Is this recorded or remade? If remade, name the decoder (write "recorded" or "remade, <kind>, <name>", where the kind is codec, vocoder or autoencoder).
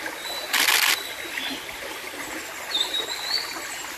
recorded